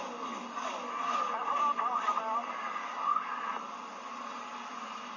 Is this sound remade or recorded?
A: recorded